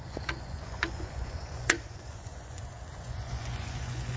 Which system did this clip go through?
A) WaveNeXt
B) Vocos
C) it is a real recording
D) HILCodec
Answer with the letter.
B